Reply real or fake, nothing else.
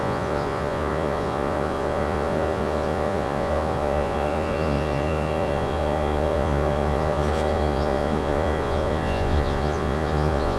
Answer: fake